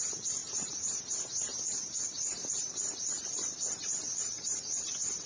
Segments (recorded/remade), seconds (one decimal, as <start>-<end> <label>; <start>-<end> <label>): 0.0-1.5 recorded; 1.5-4.7 remade; 4.7-5.3 recorded